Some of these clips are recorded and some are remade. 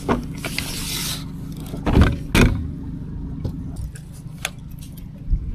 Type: recorded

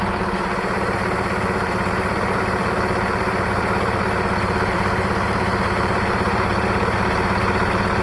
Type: remade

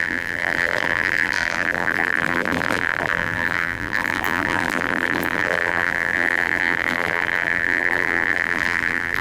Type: remade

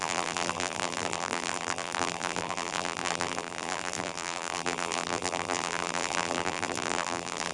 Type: remade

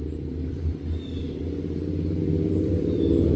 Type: remade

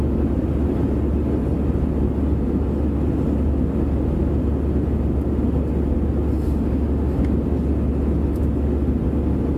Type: recorded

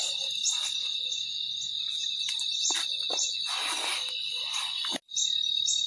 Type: recorded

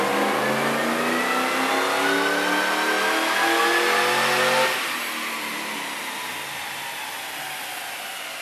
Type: recorded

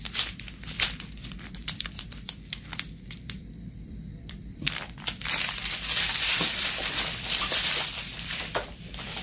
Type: remade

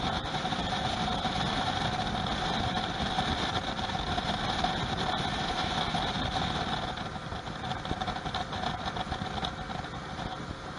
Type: recorded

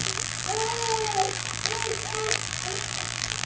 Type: remade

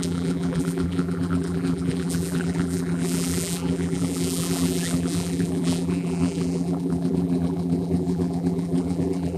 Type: remade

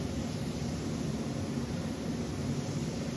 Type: recorded